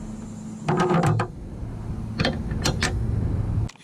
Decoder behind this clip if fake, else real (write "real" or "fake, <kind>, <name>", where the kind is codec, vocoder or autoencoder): real